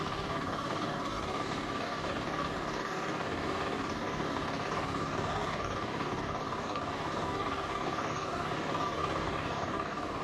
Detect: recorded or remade remade